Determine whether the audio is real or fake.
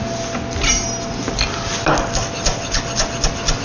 real